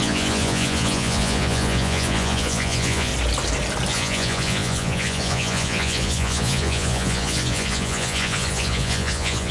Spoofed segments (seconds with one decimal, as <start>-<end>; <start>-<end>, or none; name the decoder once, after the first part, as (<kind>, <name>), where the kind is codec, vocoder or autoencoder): 0.0-3.1 (vocoder, Vocos); 3.9-9.5